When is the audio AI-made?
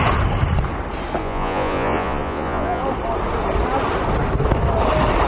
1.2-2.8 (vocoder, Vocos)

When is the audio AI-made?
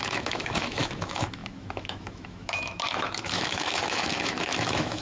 0.0-5.0 (autoencoder, DAC-VAE)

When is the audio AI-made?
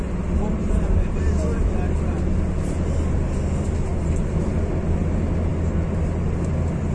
none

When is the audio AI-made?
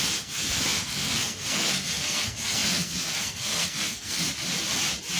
0.0-4.2 (codec, SNAC)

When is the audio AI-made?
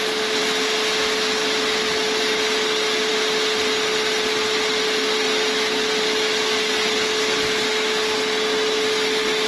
none